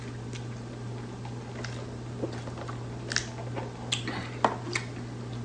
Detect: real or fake real